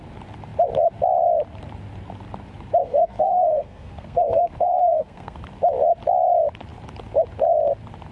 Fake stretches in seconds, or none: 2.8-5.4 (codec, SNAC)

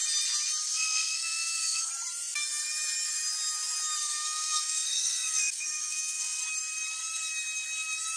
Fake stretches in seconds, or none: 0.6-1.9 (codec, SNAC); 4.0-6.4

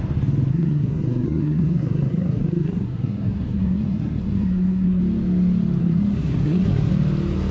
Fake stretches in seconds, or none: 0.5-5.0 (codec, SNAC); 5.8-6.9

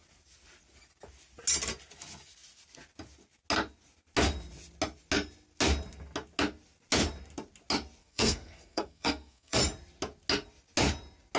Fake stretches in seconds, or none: 8.0-9.6 (codec, SNAC)

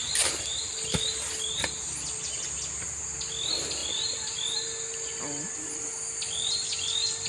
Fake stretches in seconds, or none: none